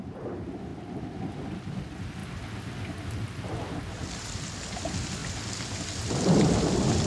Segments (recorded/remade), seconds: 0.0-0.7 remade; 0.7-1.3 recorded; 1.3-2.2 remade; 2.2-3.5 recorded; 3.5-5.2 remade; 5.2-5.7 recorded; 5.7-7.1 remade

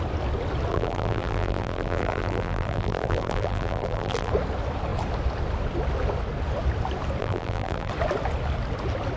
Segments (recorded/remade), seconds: 0.0-0.7 recorded; 0.7-4.3 remade; 4.3-7.2 recorded; 7.2-7.9 remade; 7.9-9.2 recorded

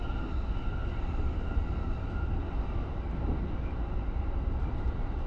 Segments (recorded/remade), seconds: 0.0-0.8 recorded; 0.8-2.9 remade; 2.9-5.3 recorded

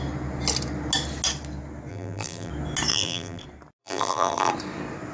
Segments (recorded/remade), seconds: 0.0-1.9 recorded; 1.9-2.5 remade; 2.5-2.9 recorded; 2.9-3.4 remade; 3.4-3.8 recorded; 3.8-4.5 remade; 4.5-5.1 recorded

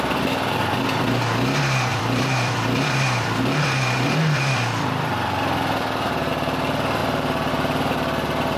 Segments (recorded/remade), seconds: 0.0-1.9 recorded; 1.9-6.3 remade; 6.3-8.6 recorded